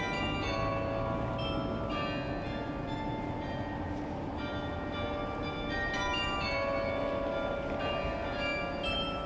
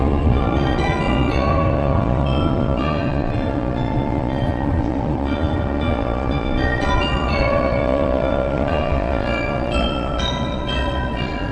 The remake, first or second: second